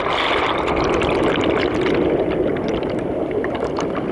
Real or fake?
real